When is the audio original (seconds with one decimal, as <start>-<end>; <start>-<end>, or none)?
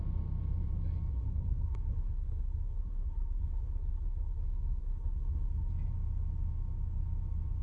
0.0-1.1; 5.7-7.6